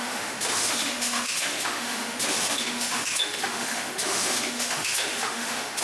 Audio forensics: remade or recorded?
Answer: remade